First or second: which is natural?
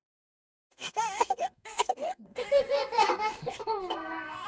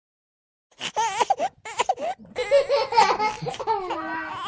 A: second